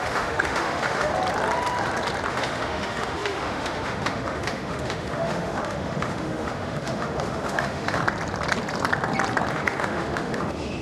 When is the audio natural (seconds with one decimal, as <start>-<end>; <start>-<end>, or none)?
1.1-2.3; 8.0-9.5